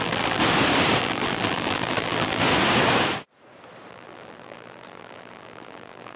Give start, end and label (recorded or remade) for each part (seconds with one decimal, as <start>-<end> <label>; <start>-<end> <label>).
0.0-0.4 remade; 0.4-1.0 recorded; 1.0-2.4 remade; 2.4-3.9 recorded; 3.9-6.2 remade